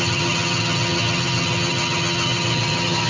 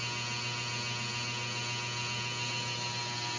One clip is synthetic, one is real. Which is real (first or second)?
second